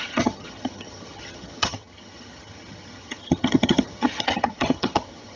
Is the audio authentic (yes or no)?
no